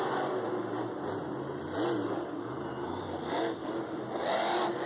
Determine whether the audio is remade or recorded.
recorded